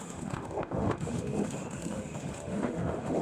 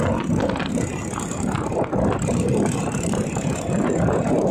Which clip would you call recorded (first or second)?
second